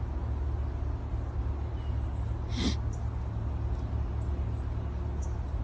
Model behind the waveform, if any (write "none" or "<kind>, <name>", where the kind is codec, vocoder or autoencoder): none